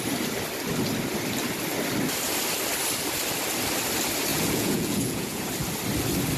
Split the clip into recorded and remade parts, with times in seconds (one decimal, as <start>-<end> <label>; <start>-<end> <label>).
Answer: 0.0-4.3 recorded; 4.3-5.4 remade; 5.4-6.4 recorded

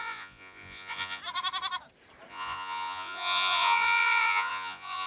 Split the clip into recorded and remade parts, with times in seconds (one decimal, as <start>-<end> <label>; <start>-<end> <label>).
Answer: 0.0-1.2 remade; 1.2-2.3 recorded; 2.3-5.1 remade

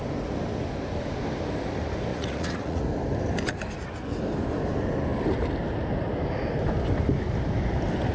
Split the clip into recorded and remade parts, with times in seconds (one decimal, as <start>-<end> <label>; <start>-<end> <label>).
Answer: 0.0-2.1 recorded; 2.1-2.8 remade; 2.8-8.1 recorded

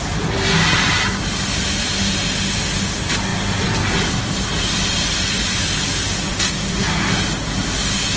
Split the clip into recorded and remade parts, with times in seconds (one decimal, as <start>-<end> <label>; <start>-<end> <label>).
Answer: 0.0-8.2 recorded

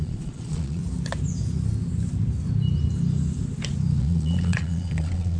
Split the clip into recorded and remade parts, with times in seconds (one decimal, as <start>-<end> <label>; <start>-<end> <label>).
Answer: 0.0-0.8 remade; 0.8-4.0 recorded; 4.0-5.4 remade